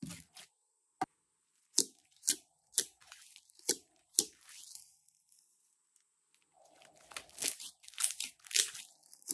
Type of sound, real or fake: real